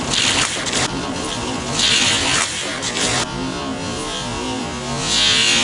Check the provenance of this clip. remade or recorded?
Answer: recorded